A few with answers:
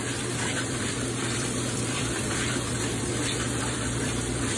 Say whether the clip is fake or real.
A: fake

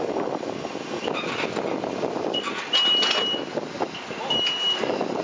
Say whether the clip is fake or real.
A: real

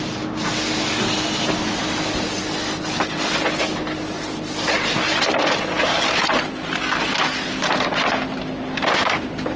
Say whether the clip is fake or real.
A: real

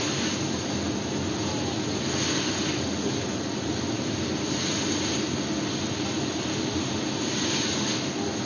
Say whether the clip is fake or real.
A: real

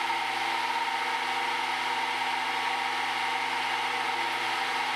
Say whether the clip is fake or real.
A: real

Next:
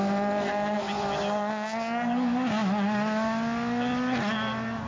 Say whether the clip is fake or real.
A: real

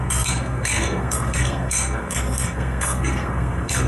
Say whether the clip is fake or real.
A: fake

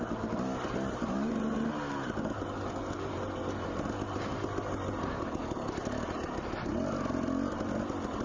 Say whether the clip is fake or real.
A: real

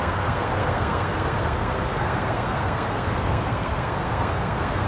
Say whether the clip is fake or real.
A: fake